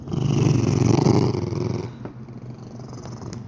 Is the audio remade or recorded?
recorded